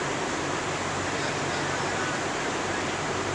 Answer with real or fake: fake